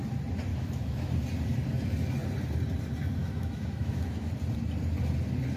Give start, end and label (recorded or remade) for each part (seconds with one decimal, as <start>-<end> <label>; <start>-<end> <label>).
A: 0.0-0.5 recorded; 0.5-1.1 remade; 1.1-3.2 recorded; 3.2-4.3 remade; 4.3-5.6 recorded